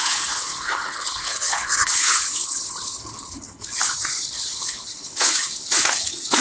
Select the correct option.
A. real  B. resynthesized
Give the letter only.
B